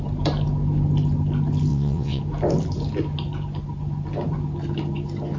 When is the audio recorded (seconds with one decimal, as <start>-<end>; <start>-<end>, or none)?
0.0-1.7; 2.2-5.4